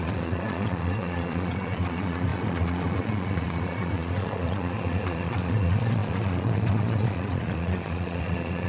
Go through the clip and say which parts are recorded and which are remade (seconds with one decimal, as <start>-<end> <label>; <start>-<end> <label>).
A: 0.0-8.7 remade